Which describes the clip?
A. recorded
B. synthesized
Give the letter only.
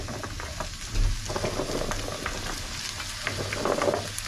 A